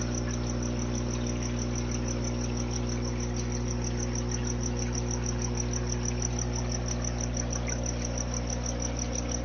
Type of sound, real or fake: real